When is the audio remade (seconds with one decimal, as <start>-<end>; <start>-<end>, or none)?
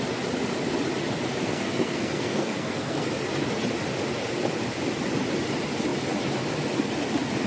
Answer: 1.4-3.1